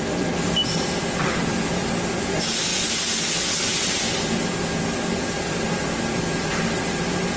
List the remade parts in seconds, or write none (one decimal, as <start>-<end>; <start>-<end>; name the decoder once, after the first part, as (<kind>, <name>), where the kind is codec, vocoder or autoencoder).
none

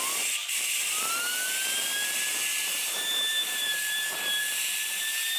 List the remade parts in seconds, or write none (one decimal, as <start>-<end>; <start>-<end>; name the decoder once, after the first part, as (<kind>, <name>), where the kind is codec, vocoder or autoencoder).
0.4-1.0 (vocoder, BigVGAN v2); 2.5-5.4